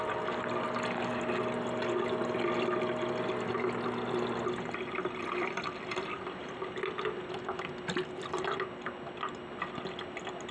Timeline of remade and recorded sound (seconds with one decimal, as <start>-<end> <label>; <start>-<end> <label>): 0.0-10.5 recorded